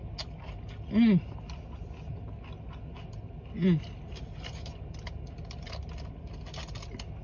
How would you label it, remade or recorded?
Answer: recorded